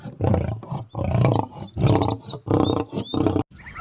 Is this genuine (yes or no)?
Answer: yes